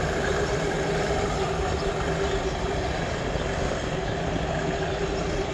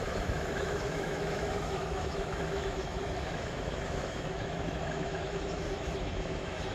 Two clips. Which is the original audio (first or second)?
first